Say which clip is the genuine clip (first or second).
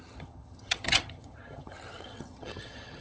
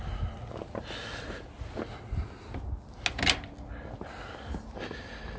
second